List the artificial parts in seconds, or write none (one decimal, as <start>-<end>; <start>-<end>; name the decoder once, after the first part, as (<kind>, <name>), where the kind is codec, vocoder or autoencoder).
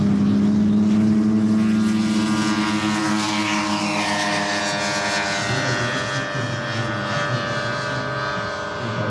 3.0-4.6 (codec, DAC)